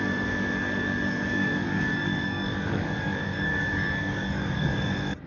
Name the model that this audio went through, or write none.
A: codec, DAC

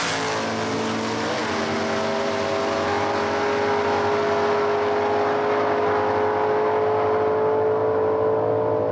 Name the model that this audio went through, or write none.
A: none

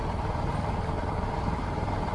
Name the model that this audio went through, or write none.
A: none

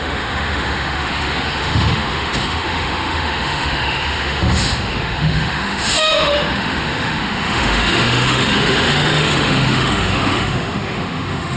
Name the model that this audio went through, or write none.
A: autoencoder, DAC-VAE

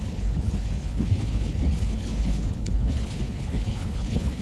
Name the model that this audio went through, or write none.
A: codec, HILCodec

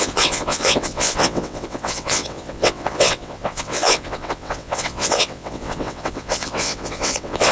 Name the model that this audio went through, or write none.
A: vocoder, WaveNeXt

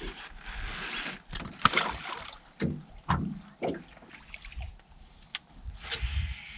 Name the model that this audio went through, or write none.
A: none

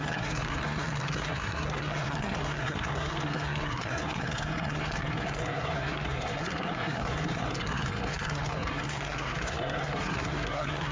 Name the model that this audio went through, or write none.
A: codec, SNAC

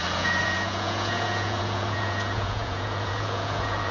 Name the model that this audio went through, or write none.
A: vocoder, Vocos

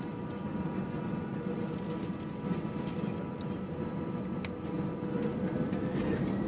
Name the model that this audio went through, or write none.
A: none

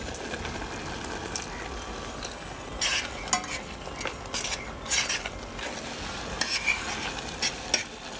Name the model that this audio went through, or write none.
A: none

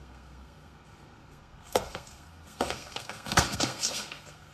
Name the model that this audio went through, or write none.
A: codec, SNAC